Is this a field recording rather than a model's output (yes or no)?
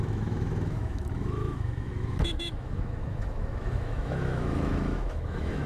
no